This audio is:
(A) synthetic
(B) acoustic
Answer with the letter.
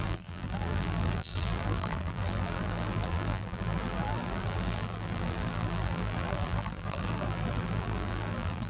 A